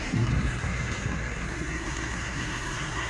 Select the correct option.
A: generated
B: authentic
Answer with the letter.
A